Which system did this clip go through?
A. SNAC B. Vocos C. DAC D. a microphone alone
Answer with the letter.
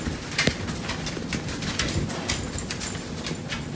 D